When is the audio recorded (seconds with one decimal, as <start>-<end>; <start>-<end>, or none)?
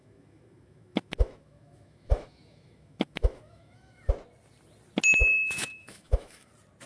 4.1-5.6; 6.5-6.9